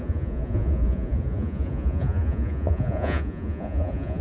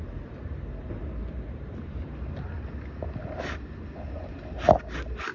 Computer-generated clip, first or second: first